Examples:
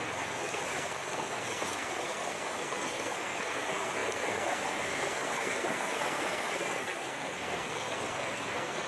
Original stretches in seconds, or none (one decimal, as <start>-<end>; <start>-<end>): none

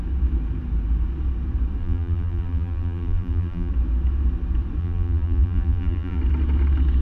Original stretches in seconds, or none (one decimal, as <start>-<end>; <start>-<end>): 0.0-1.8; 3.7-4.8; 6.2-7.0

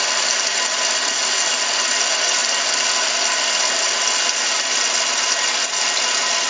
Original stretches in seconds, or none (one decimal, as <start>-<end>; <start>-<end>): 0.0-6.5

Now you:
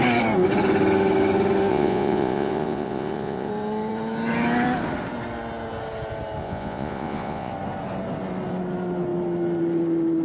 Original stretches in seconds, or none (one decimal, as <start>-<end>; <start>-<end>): 0.0-1.7; 3.5-6.4; 7.5-10.2